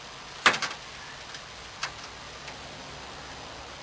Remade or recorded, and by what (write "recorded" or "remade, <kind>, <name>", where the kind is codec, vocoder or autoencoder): recorded